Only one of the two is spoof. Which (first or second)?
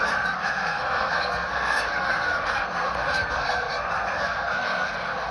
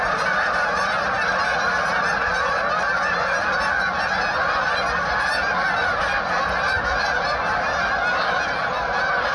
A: first